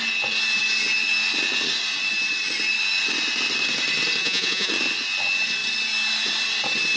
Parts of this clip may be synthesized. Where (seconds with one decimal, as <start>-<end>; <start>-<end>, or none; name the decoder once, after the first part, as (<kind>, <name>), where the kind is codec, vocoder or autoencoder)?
4.2-4.7 (vocoder, Vocos)